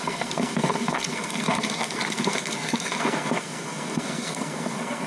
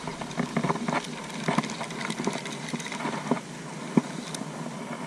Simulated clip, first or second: first